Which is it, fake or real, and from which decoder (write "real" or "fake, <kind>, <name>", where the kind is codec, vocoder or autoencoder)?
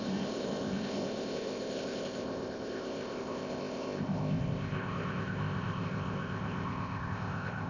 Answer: fake, codec, ZipCodec